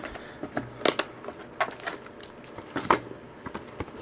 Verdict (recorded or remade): recorded